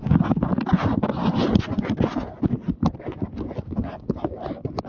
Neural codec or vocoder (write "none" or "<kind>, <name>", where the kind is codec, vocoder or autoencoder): none